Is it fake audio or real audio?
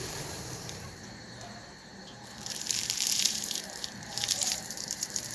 fake